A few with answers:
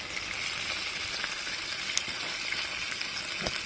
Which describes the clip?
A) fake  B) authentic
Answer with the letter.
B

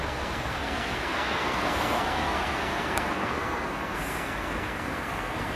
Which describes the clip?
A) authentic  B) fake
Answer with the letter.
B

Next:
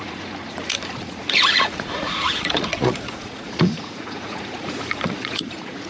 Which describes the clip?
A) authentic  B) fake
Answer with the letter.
B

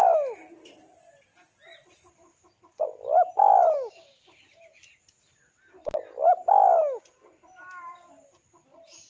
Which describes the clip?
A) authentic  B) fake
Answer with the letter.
A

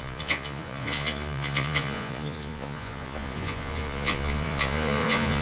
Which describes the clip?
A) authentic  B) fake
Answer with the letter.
B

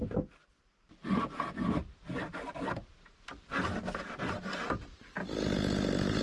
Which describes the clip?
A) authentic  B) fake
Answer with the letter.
A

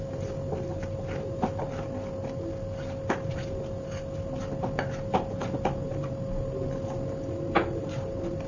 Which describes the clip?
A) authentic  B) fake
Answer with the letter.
A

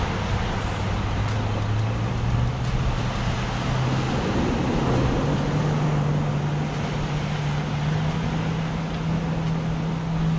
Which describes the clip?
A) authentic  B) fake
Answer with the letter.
A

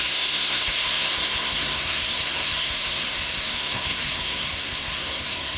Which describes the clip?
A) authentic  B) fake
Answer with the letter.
B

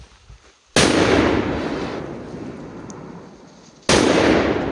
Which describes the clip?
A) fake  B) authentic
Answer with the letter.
B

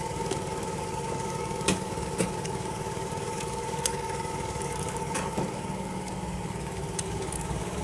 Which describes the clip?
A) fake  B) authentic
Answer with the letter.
A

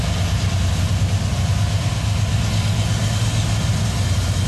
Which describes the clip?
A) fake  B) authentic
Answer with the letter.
B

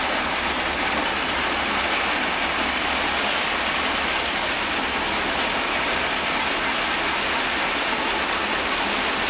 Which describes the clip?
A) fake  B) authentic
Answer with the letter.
B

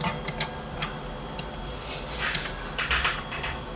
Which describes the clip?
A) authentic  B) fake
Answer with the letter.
A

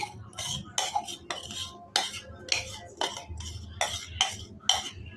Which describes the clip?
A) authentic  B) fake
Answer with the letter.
A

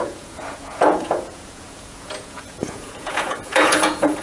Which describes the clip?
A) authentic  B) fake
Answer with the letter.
B